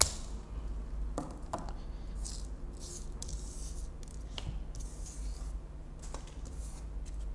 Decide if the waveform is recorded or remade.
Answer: recorded